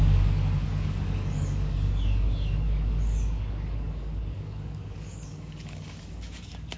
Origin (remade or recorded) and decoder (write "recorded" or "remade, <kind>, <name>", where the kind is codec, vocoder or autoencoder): remade, codec, DAC